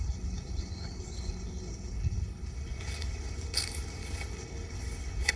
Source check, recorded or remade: remade